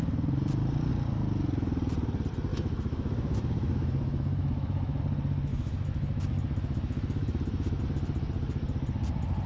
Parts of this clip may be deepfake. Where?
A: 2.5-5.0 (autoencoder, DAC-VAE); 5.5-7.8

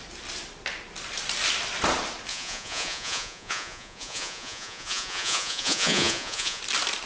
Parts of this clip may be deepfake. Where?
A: 2.3-6.6 (vocoder, Vocos)

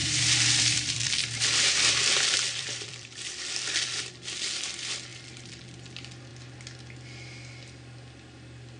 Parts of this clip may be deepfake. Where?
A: 0.0-4.1 (vocoder, BigVGAN v2); 5.1-5.6

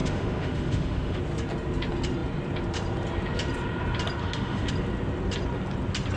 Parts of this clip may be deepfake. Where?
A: 0.0-1.2 (autoencoder, DAC-VAE); 4.2-4.7